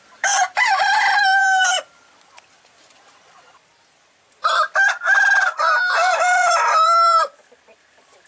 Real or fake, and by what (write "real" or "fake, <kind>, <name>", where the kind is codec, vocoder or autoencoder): fake, vocoder, BigVGAN v2